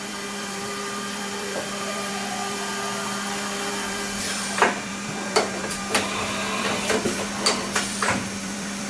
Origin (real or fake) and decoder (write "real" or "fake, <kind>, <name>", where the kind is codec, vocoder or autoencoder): fake, vocoder, BigVGAN v2